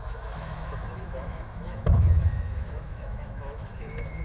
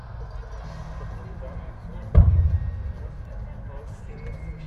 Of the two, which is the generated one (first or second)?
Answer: first